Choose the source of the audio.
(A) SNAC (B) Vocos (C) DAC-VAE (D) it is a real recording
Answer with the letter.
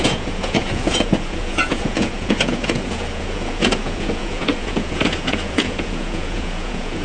B